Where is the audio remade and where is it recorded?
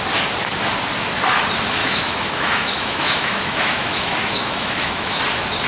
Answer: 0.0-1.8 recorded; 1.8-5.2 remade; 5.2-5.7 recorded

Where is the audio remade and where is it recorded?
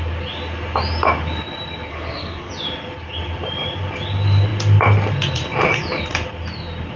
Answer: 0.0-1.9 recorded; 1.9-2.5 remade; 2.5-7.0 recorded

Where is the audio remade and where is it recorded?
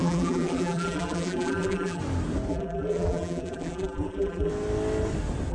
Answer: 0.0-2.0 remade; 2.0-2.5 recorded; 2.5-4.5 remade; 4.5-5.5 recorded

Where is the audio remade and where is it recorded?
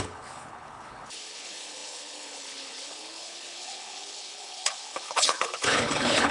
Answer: 0.0-6.3 remade